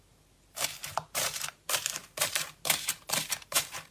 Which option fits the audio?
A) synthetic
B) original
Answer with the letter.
A